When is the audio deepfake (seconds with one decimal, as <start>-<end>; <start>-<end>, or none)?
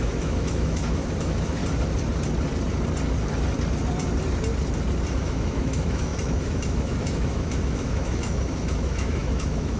0.0-1.6; 5.1-9.8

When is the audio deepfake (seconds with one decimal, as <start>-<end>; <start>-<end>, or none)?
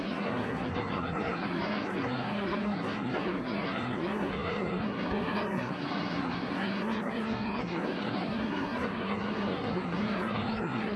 0.0-11.0